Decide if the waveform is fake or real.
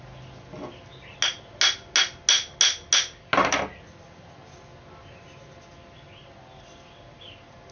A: real